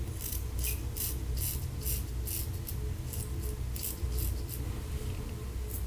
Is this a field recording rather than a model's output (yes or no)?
yes